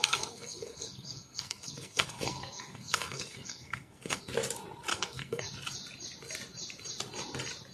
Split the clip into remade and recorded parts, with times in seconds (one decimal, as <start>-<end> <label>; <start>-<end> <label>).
0.0-4.3 remade; 4.3-4.9 recorded; 4.9-5.4 remade; 5.4-7.7 recorded